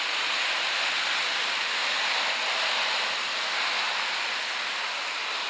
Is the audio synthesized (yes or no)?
no